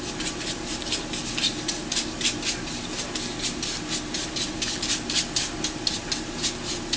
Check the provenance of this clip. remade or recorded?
recorded